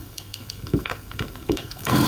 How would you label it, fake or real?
fake